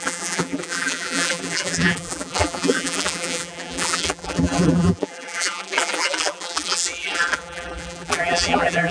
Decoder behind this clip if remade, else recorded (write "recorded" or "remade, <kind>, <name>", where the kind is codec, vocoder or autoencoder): remade, vocoder, BigVGAN v2